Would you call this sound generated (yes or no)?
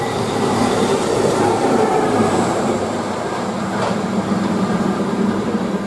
yes